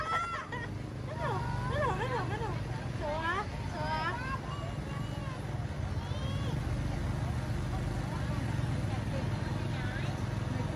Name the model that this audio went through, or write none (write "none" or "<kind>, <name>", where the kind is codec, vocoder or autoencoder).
none